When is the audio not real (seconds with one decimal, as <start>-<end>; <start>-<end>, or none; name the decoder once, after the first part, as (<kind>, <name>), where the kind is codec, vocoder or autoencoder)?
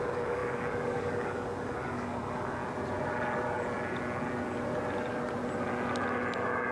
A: 0.0-2.6 (codec, DAC)